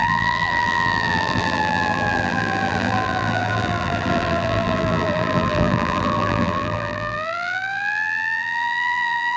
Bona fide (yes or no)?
no